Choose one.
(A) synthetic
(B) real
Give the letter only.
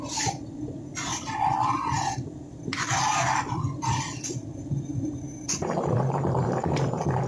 A